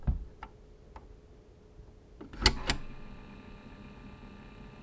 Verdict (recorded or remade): recorded